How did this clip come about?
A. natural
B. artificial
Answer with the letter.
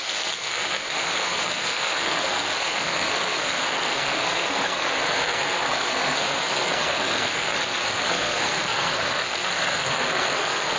B